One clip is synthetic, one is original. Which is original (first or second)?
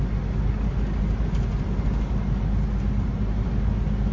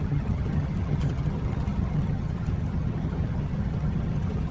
first